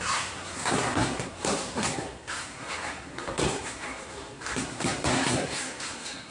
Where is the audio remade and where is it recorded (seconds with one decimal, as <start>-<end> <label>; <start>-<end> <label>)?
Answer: 0.0-6.3 remade